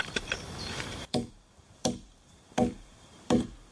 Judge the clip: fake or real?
fake